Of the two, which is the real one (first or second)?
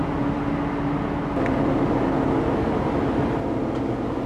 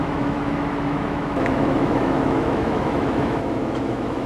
first